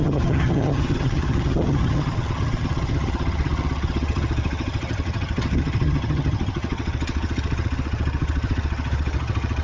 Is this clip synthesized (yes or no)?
yes